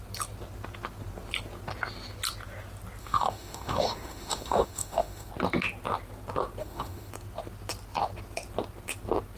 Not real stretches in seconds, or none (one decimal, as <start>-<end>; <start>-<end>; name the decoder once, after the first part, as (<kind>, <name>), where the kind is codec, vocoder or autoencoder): 3.0-5.3 (autoencoder, DAC-VAE); 6.6-7.1